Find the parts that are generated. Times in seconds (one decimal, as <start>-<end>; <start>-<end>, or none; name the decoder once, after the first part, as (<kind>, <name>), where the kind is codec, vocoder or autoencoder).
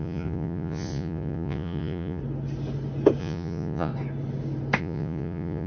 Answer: 0.0-2.2 (vocoder, Vocos); 3.2-3.9; 4.8-5.7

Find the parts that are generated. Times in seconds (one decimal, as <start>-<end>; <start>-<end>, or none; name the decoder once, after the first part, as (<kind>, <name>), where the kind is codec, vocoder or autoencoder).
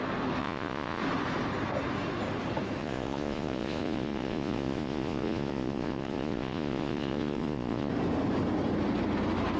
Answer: 0.4-1.0 (vocoder, Vocos); 2.8-7.9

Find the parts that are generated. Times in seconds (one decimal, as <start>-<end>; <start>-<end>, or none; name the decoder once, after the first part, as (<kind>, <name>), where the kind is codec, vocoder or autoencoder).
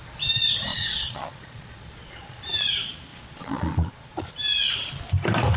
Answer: 0.7-2.4 (vocoder, Vocos); 3.1-4.3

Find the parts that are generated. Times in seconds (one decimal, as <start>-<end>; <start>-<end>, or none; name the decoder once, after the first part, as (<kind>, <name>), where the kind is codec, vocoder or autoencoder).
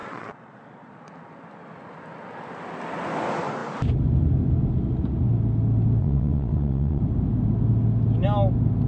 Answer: 0.0-0.9 (vocoder, Vocos); 6.0-7.0